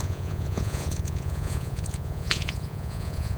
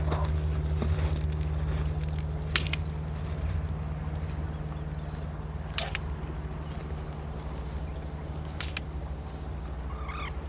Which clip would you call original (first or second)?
second